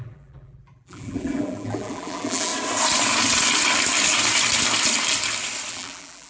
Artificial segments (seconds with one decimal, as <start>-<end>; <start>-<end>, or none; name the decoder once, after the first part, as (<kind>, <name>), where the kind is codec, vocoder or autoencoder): 0.0-2.5 (vocoder, BigVGAN v2); 5.7-6.3